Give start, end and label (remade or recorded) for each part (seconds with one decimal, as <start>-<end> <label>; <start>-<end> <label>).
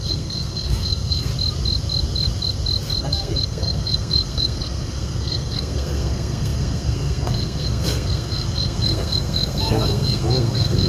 0.0-1.3 remade; 1.3-3.0 recorded; 3.0-10.9 remade